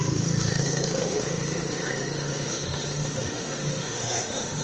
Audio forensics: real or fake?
fake